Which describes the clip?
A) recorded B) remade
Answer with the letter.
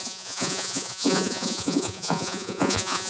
B